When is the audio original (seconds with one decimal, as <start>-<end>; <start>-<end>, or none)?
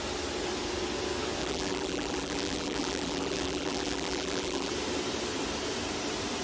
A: 0.0-1.4; 4.7-6.4